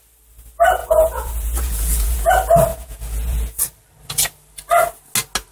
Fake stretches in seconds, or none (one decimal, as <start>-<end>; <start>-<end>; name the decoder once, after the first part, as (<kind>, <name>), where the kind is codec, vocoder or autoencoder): 0.8-2.3 (vocoder, Vocos); 2.7-3.6